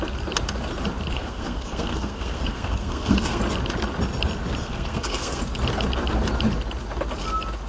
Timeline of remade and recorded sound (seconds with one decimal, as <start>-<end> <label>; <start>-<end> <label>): 0.0-1.1 recorded; 1.1-3.4 remade; 3.4-4.6 recorded; 4.6-5.4 remade; 5.4-7.7 recorded